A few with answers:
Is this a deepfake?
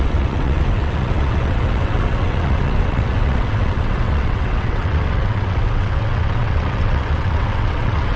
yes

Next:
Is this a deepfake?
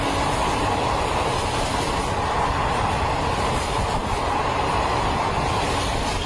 no